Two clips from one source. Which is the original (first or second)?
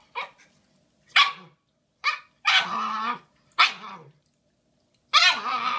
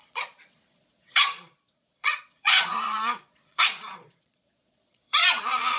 first